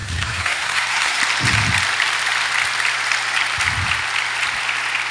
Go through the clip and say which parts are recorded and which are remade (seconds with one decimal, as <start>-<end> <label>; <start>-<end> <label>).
0.0-1.2 remade; 1.2-5.1 recorded